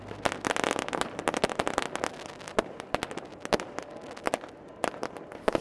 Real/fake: real